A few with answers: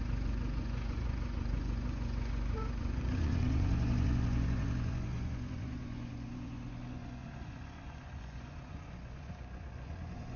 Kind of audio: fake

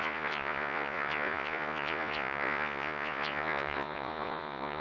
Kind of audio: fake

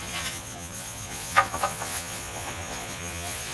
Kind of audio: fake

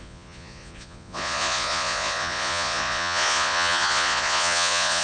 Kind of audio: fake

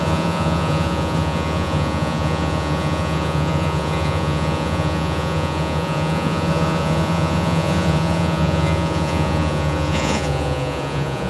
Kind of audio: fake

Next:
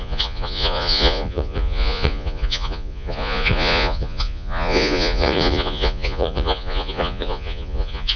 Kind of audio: fake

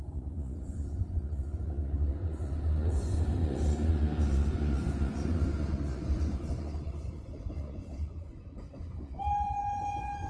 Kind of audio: fake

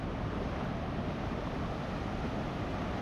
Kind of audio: real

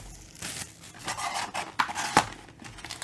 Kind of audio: real